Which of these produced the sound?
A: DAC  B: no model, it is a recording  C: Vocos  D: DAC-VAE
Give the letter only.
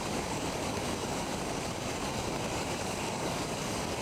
A